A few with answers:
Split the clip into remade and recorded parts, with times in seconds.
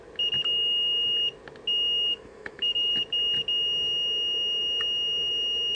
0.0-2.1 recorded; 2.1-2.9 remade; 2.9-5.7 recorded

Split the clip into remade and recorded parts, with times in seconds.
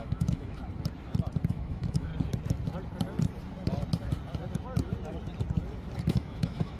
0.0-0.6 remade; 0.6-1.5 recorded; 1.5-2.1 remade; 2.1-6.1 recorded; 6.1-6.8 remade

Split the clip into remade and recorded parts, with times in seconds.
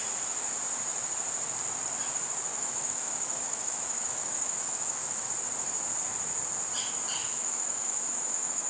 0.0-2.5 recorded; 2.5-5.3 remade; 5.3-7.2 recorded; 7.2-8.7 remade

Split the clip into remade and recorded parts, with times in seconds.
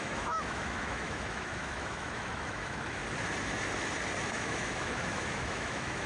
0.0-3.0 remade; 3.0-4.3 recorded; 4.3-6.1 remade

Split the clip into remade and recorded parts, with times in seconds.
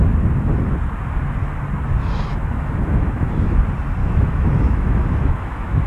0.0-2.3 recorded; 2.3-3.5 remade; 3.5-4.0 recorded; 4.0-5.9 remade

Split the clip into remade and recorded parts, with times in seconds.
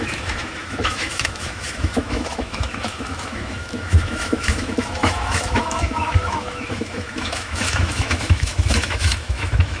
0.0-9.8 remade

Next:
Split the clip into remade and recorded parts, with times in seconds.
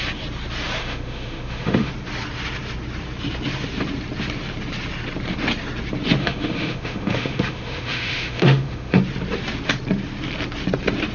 0.0-0.8 recorded; 0.8-1.9 remade; 1.9-6.2 recorded; 6.2-9.0 remade; 9.0-11.1 recorded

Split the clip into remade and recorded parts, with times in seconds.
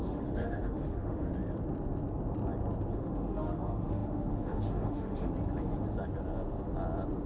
0.0-1.3 remade; 1.3-2.9 recorded; 2.9-5.3 remade; 5.3-7.3 recorded